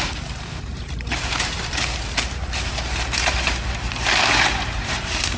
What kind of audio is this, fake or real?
fake